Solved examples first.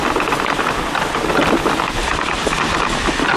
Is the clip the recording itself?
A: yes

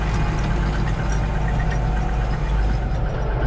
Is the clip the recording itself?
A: yes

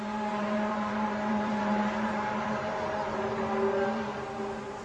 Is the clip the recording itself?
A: no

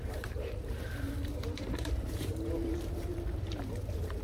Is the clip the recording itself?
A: no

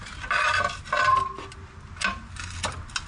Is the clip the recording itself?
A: yes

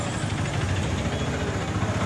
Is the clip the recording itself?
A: yes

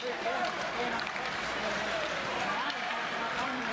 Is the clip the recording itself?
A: no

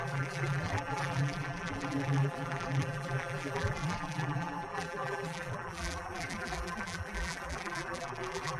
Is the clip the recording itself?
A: no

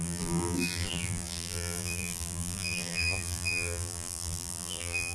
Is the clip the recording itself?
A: no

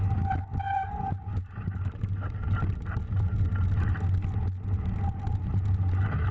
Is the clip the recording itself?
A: yes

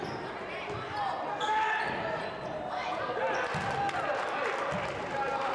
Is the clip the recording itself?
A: yes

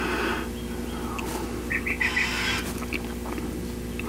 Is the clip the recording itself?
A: yes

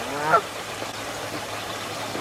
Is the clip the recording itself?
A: yes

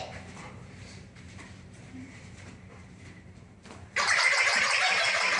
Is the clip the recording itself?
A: no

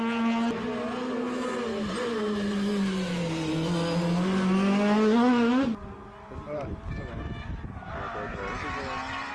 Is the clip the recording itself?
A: yes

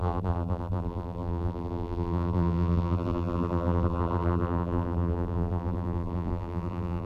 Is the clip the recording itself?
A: no